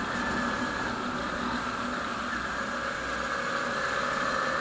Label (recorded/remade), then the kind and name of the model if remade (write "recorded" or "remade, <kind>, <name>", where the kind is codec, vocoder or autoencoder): recorded